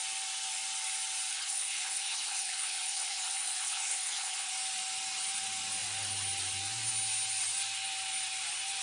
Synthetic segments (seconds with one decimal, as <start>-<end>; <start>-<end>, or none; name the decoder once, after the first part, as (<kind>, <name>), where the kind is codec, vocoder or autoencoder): 1.3-4.5 (codec, HILCodec)